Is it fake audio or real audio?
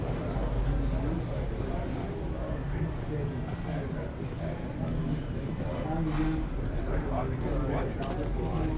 real